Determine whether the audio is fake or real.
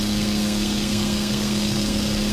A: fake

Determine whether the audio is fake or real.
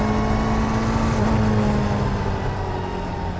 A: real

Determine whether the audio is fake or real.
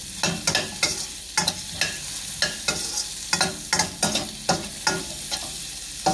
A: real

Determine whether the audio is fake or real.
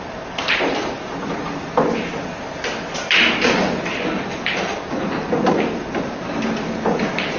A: real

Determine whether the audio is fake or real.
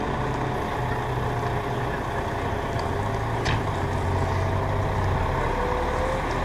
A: real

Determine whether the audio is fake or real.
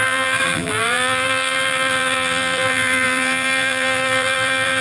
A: fake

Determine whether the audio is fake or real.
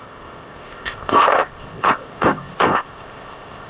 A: fake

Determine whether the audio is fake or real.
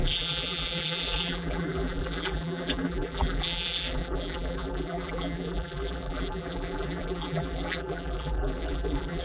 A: fake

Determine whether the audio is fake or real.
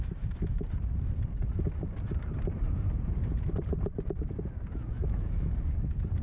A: real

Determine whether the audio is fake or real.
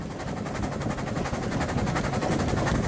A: real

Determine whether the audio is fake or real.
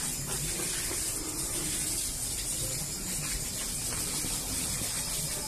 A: real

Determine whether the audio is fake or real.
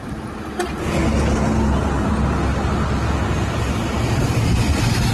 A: real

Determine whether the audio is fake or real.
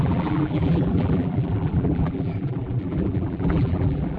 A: fake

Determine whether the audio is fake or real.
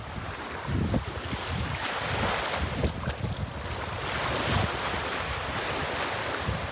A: real